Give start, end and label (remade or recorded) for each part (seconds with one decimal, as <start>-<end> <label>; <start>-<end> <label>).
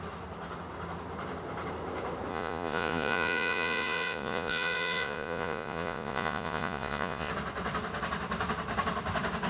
0.0-2.3 recorded; 2.3-7.3 remade; 7.3-9.5 recorded